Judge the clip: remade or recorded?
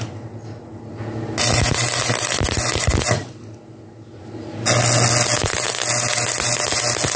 recorded